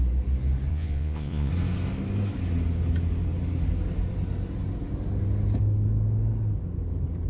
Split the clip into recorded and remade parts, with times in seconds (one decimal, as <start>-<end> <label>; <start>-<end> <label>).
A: 0.0-0.7 recorded; 0.7-1.5 remade; 1.5-7.3 recorded